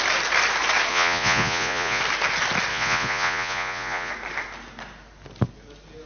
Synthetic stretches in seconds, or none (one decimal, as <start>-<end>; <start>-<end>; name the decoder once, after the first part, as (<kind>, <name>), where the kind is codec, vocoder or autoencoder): 0.9-2.0 (vocoder, Vocos); 2.7-4.1